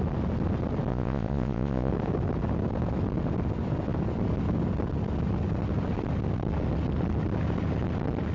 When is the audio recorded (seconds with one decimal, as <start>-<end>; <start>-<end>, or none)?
0.0-0.9; 1.9-8.3